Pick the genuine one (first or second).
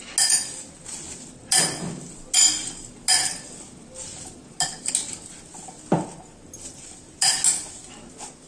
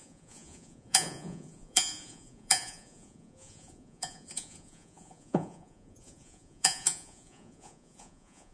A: first